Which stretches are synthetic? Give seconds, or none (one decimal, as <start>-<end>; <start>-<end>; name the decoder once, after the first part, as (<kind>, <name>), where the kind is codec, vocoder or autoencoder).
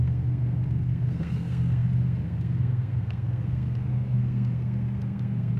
0.0-5.6 (codec, SNAC)